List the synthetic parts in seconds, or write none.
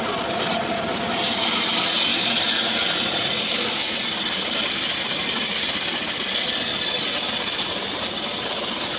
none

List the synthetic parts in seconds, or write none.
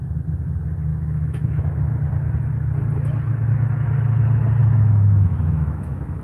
0.9-1.6; 4.6-6.2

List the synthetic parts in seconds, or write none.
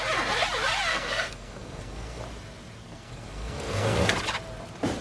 0.9-2.2; 2.8-4.1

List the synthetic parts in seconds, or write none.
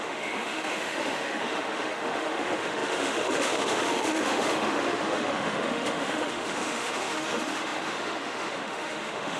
0.0-9.4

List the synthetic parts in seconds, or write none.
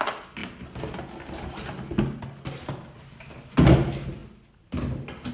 none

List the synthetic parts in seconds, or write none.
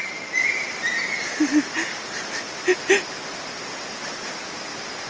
none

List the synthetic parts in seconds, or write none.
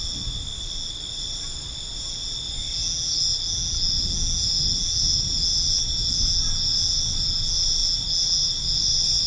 none